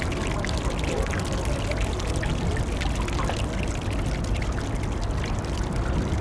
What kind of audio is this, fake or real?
real